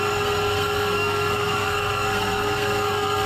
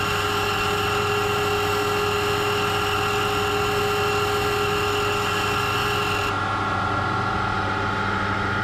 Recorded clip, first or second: second